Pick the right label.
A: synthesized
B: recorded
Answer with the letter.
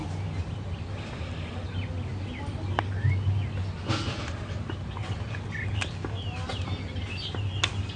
B